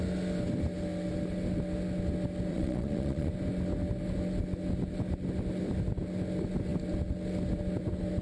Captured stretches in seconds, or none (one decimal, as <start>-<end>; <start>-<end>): 0.0-2.5; 3.3-8.2